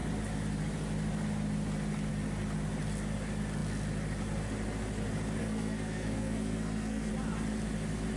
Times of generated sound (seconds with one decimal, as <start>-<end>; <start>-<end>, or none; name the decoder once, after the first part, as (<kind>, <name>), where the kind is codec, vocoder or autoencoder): 5.4-7.1 (codec, SNAC)